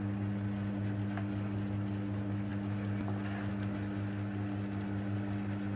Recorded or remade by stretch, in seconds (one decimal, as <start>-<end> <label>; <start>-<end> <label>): 0.0-5.8 recorded